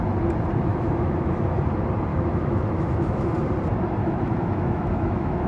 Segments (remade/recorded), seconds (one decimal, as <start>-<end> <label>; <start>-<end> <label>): 0.0-0.7 recorded; 0.7-1.6 remade; 1.6-2.1 recorded; 2.1-3.3 remade; 3.3-4.0 recorded; 4.0-5.5 remade